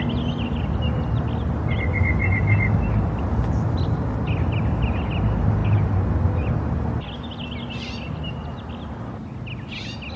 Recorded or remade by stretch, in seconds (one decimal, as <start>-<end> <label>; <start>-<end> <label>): 0.0-10.2 recorded